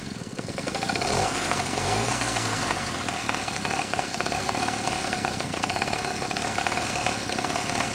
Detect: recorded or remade remade